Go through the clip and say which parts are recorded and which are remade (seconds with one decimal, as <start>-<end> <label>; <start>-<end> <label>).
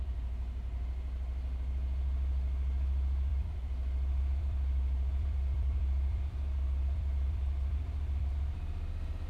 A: 0.0-3.3 recorded; 3.3-8.2 remade; 8.2-9.3 recorded